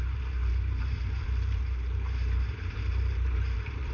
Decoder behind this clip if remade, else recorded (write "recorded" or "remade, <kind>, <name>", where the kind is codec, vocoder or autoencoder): remade, vocoder, BigVGAN v2